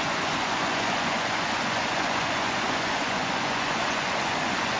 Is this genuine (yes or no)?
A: no